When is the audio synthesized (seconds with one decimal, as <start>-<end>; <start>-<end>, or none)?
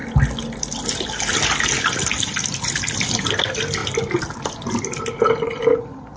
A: none